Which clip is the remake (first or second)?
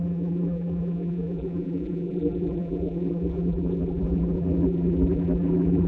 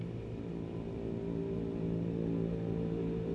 first